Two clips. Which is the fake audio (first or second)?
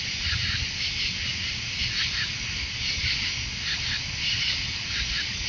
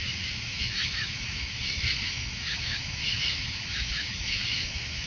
second